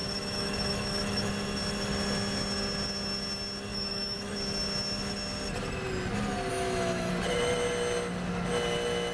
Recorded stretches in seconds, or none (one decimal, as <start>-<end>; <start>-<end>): 1.3-3.7; 4.3-6.5; 7.1-9.1